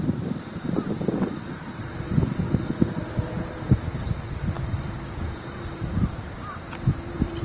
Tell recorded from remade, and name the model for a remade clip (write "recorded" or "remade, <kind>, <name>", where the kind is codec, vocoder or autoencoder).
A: remade, vocoder, BigVGAN v2